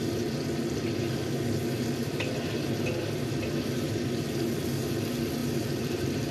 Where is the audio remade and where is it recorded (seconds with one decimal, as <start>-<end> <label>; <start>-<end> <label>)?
0.0-5.4 recorded; 5.4-6.3 remade

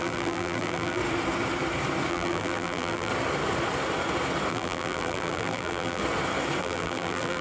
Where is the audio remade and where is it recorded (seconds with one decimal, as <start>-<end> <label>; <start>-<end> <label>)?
0.0-1.0 remade; 1.0-2.1 recorded; 2.1-3.1 remade; 3.1-4.5 recorded; 4.5-6.0 remade; 6.0-6.6 recorded; 6.6-7.4 remade